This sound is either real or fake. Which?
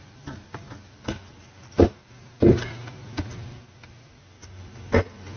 real